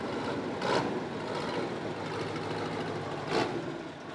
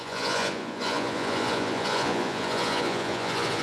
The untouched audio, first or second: first